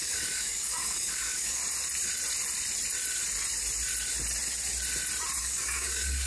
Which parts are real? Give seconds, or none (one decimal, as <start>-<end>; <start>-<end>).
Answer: 1.6-5.4